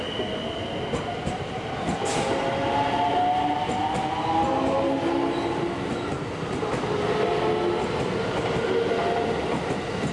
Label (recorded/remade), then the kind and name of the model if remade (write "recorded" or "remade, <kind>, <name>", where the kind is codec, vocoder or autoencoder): recorded